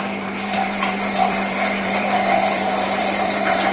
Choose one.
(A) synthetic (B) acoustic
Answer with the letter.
A